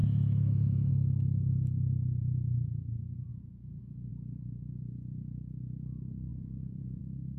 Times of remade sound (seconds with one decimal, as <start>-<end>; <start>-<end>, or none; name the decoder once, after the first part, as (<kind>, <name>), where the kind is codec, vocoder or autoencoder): 0.0-0.9 (vocoder, Vocos); 3.3-4.1; 6.3-7.0